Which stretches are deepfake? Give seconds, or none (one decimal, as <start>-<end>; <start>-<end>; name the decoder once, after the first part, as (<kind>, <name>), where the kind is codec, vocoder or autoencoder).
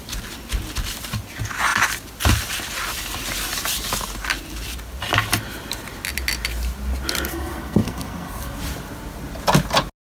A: 7.3-8.6 (codec, SNAC)